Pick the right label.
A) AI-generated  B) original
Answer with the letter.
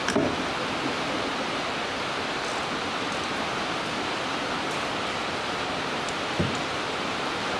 B